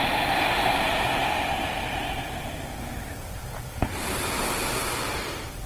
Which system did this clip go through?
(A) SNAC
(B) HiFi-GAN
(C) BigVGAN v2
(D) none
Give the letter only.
D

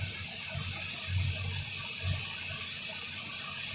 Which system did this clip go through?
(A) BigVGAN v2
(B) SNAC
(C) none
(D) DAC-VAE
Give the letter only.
C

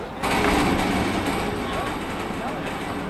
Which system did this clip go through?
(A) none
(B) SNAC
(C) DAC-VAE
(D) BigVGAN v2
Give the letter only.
A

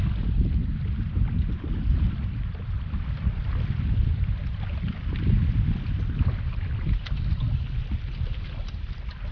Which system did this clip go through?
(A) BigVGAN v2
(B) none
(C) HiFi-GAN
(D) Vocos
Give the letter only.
B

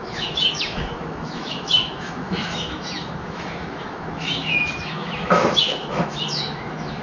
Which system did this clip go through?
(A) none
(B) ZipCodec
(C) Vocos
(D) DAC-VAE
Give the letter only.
D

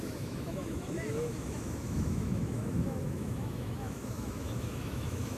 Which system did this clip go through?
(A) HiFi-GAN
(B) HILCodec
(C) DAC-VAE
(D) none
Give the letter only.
C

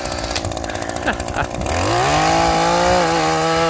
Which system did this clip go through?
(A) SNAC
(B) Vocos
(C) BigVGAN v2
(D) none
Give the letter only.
D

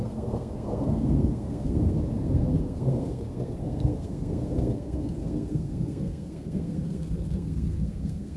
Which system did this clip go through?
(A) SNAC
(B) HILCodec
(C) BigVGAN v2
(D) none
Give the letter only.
A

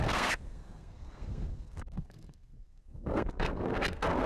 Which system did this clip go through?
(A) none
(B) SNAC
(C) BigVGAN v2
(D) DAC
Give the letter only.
B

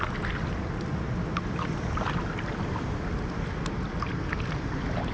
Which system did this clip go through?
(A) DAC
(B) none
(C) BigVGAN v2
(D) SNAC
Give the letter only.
B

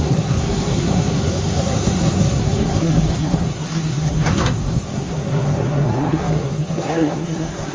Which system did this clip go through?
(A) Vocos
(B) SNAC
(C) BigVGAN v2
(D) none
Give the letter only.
B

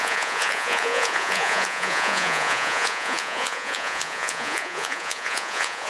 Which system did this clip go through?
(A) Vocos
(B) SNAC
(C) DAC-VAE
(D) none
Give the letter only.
A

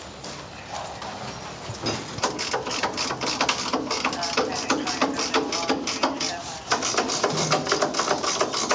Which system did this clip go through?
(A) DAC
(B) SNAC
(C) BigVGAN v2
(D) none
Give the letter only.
D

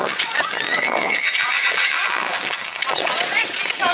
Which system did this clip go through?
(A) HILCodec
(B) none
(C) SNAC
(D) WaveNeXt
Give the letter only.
D